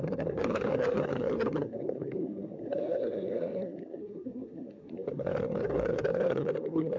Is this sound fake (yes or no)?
yes